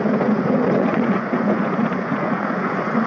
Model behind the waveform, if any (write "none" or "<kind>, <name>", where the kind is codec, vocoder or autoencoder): vocoder, Vocos